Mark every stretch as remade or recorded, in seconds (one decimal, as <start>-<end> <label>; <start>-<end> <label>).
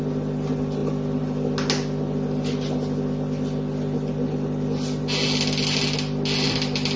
0.0-7.0 recorded